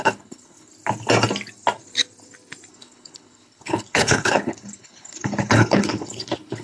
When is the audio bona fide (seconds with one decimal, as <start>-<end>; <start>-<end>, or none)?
0.7-2.7